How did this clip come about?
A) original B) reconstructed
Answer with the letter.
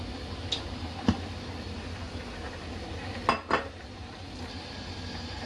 A